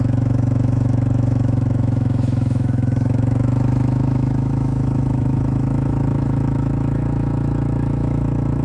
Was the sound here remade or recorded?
remade